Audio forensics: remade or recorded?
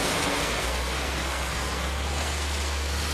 remade